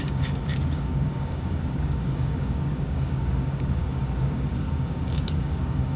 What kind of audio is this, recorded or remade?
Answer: remade